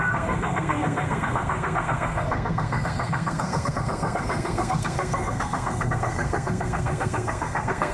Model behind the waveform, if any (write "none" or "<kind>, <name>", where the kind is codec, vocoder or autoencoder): codec, SNAC